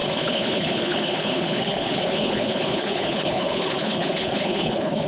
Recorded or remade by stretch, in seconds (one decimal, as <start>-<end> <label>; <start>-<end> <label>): 0.0-5.1 remade